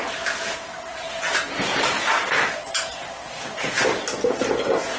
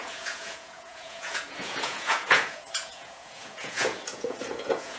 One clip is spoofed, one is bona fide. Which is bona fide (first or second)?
first